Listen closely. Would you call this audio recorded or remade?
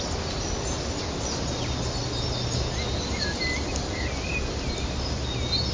recorded